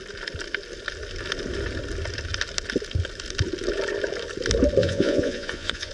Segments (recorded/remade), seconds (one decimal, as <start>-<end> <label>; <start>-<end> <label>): 0.0-4.8 recorded; 4.8-5.9 remade